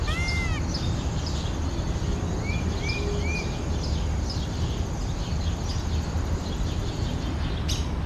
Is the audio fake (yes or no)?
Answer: no